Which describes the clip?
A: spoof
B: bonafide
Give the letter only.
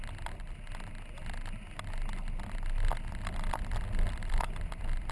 B